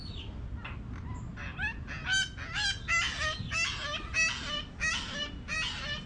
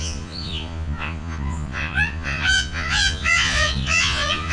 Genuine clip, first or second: first